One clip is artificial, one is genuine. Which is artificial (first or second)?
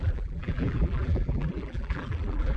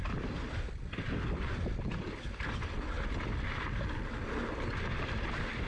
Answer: first